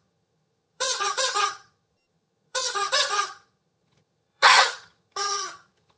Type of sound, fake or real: fake